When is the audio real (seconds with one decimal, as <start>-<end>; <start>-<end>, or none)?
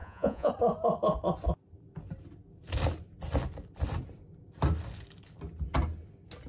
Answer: 0.5-6.5